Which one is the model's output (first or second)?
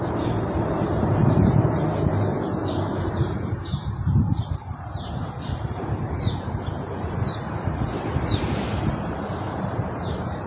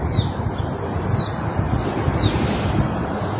first